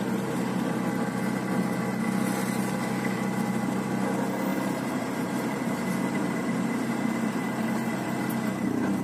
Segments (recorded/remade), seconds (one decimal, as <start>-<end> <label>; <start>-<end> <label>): 0.0-4.5 recorded; 4.5-8.3 remade; 8.3-9.0 recorded